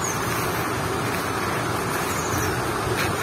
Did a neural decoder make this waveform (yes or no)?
no